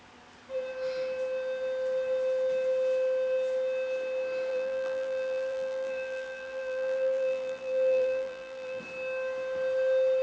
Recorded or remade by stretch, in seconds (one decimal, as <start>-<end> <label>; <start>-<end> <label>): 0.0-4.5 recorded; 4.5-8.8 remade; 8.8-10.2 recorded